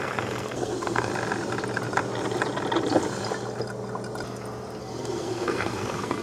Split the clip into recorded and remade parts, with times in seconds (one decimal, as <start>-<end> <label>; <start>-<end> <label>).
0.0-1.1 remade; 1.1-4.8 recorded; 4.8-6.2 remade